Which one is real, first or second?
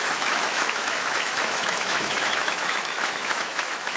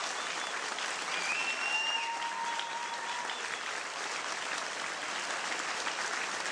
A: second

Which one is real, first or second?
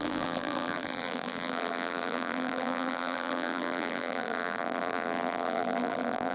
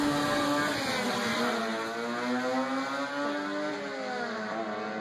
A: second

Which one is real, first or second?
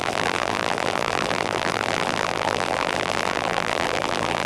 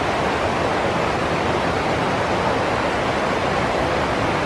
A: second